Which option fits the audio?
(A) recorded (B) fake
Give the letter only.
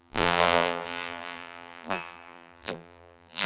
B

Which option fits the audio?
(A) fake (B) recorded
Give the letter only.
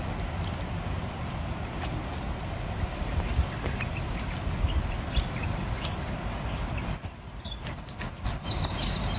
B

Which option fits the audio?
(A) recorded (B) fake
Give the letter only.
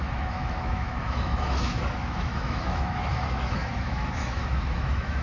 B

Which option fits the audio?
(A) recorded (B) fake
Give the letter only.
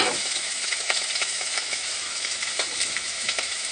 B